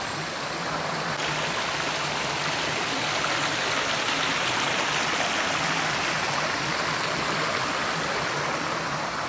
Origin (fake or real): real